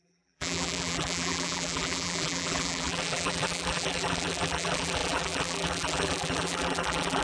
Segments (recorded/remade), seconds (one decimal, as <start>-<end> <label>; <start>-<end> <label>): 0.0-7.2 remade